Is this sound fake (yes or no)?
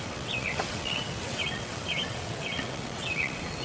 yes